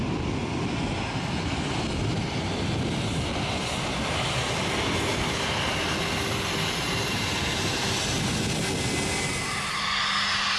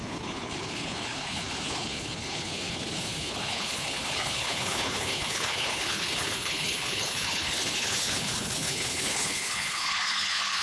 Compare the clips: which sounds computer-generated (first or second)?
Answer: second